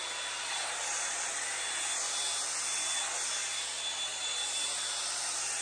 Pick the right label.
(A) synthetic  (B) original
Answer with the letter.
B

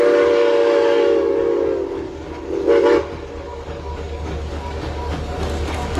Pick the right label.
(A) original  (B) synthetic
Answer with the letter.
B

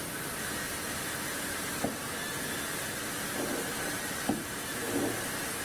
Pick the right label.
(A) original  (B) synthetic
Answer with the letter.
A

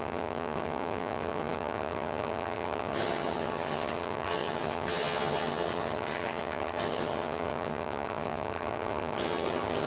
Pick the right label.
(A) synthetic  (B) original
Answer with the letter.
A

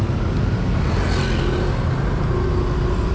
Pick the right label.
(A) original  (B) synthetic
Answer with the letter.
A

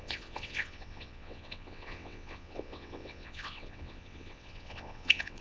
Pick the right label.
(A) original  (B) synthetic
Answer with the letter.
B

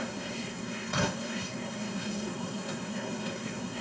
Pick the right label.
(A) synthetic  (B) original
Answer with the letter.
A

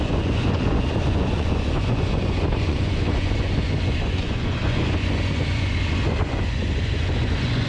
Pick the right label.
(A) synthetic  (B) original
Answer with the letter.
A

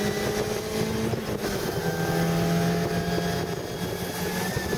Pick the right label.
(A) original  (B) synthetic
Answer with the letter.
A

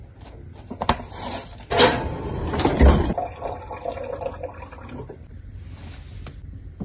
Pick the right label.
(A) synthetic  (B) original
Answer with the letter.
B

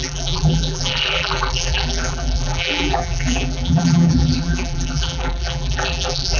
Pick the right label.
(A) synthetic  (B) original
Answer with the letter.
A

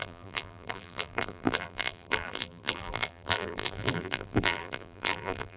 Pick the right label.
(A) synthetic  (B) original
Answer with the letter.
A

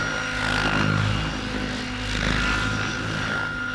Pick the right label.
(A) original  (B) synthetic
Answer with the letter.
A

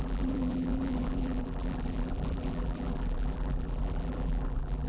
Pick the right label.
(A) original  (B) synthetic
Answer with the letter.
B